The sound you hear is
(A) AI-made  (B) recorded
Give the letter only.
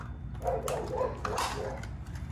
B